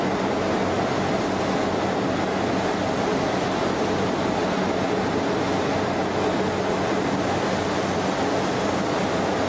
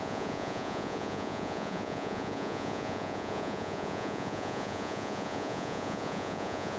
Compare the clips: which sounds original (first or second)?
first